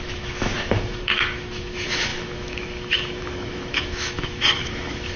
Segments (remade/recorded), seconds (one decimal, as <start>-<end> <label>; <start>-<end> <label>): 0.0-5.2 remade